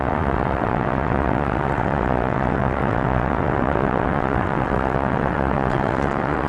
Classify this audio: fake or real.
fake